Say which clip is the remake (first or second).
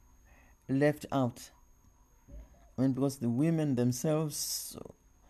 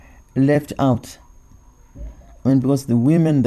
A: second